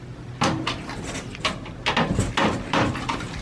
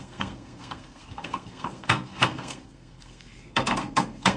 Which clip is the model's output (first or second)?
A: second